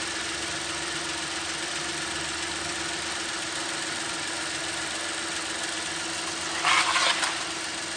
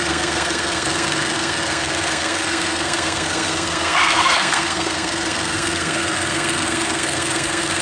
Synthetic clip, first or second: second